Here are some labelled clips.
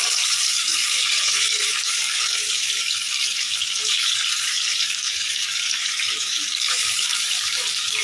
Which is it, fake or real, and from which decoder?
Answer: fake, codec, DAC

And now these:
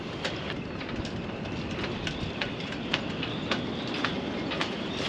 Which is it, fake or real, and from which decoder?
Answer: real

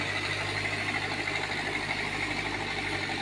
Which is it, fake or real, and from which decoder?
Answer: real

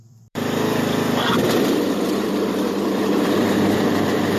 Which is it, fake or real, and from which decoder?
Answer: fake, vocoder, BigVGAN v2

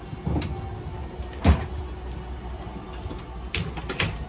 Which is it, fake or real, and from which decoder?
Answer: real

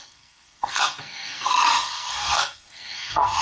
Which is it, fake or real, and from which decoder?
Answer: fake, codec, SNAC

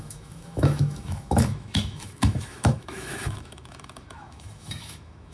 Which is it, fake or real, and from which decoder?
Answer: fake, autoencoder, DAC-VAE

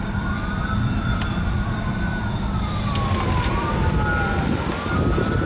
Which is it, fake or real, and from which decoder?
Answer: fake, vocoder, BigVGAN v2